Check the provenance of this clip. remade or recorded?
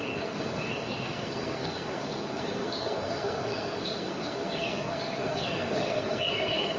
remade